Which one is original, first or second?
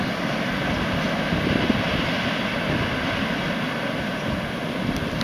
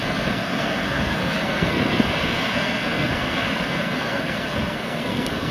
first